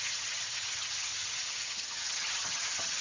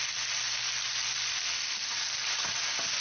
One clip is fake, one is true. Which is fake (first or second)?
first